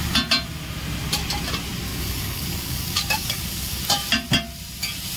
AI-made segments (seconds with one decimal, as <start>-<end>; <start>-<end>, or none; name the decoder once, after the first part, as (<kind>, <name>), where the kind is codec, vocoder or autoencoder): 1.9-3.8 (codec, DAC)